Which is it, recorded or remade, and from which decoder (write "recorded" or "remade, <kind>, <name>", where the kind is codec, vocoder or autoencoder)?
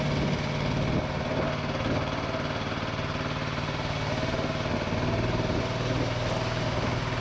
recorded